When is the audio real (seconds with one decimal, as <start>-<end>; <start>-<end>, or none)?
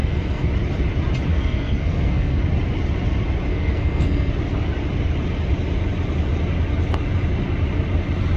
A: 0.5-1.3; 2.4-3.5; 4.3-8.4